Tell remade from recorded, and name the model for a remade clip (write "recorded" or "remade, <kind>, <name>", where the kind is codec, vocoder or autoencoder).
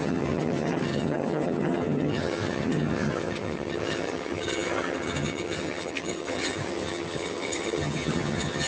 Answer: remade, vocoder, HiFi-GAN